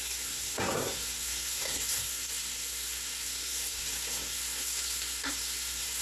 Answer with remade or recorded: remade